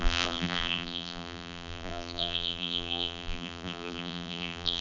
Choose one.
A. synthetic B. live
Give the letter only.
A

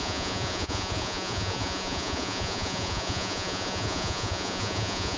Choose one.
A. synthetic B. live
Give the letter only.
A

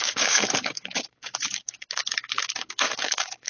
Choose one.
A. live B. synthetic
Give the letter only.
B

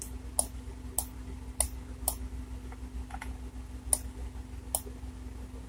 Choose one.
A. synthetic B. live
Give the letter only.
B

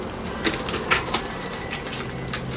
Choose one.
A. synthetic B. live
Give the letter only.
B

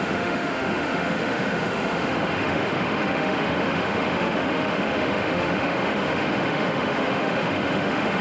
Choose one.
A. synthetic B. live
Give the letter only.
A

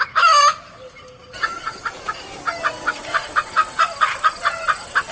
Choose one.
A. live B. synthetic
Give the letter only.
B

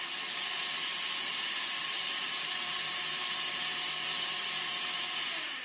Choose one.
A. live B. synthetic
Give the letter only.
B